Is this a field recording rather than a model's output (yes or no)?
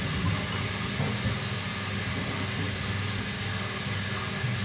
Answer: yes